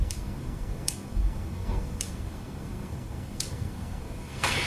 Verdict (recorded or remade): remade